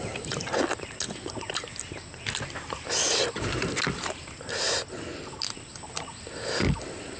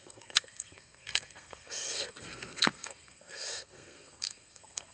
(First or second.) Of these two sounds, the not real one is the second